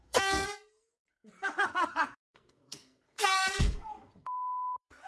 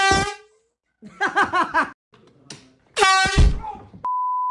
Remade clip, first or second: first